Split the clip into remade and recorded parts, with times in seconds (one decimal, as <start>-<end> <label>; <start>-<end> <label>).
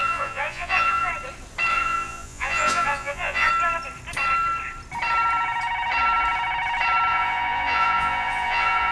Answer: 0.0-1.1 remade; 1.1-1.7 recorded; 1.7-3.5 remade; 3.5-7.1 recorded; 7.1-8.9 remade